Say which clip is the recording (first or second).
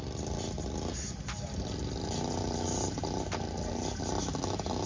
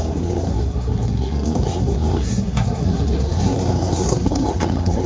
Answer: first